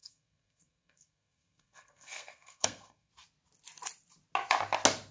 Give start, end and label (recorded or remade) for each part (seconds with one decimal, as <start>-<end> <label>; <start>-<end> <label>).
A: 0.0-3.1 remade; 3.1-5.1 recorded